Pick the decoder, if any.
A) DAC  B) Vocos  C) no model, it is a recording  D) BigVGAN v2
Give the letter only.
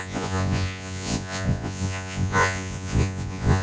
B